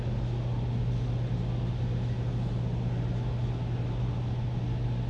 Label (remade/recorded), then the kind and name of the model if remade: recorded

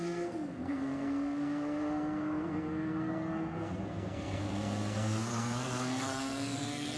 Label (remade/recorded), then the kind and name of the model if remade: remade, codec, SNAC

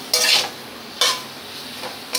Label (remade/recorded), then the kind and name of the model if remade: recorded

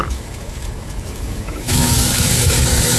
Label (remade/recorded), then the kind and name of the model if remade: remade, codec, DAC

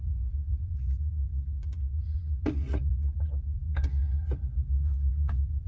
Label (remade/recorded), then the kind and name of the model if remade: remade, vocoder, Vocos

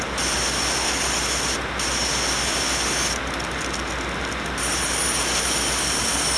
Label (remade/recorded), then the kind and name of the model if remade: recorded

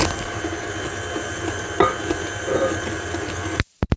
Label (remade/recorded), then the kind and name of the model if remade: recorded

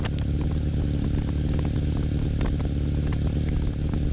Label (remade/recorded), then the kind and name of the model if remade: recorded